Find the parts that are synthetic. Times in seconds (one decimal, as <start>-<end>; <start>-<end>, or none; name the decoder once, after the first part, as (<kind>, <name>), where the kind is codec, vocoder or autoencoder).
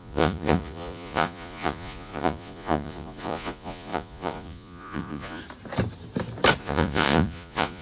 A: 0.0-5.4 (vocoder, Vocos); 6.6-7.8